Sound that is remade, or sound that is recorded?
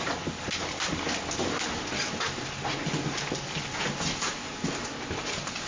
recorded